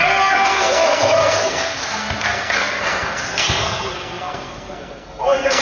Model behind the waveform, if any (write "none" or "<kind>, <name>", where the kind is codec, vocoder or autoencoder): codec, SNAC